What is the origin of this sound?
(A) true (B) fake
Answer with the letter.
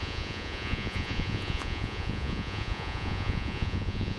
B